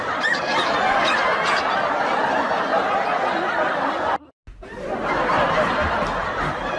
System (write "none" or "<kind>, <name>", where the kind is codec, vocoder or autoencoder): none